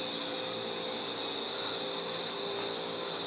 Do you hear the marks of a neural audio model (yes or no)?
no